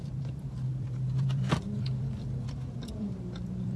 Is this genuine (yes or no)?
no